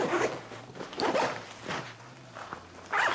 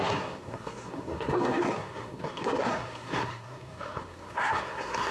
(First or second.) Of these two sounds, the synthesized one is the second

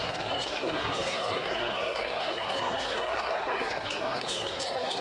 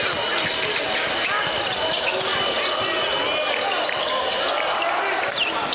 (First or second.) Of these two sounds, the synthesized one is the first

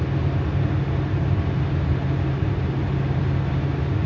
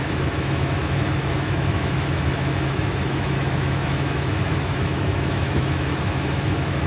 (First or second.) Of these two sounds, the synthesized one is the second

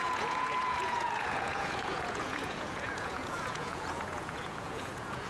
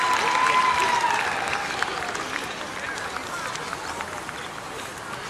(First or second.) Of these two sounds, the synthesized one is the first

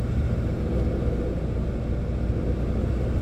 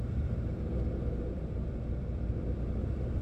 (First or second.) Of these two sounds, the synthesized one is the second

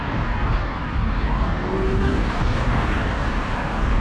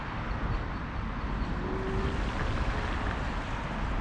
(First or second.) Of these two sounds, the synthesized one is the first